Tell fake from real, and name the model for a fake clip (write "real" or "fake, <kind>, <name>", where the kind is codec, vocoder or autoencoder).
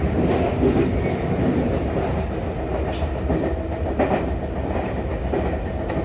real